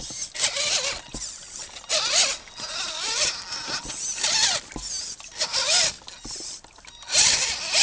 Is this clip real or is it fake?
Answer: real